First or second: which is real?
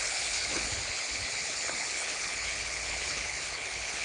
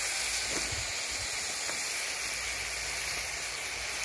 second